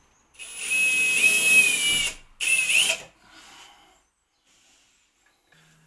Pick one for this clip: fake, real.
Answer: real